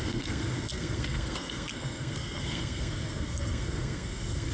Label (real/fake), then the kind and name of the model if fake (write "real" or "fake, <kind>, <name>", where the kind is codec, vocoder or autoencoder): fake, codec, SNAC